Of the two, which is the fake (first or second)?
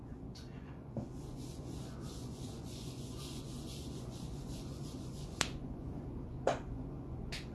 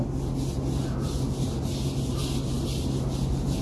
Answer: first